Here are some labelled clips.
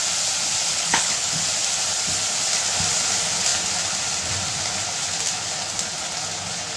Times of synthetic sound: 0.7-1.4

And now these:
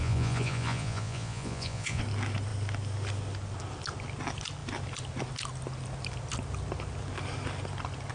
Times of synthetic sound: 0.0-2.0

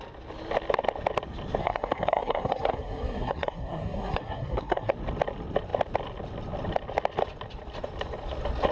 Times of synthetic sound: 1.6-4.9